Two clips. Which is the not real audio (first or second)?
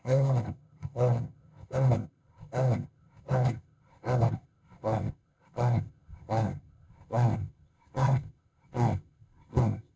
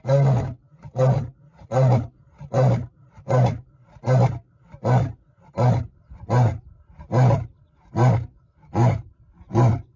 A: first